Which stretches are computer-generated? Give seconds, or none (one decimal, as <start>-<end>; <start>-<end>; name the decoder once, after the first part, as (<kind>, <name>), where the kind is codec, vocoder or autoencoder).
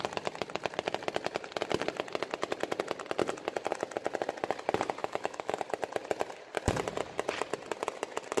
5.0-5.6 (autoencoder, DAC-VAE)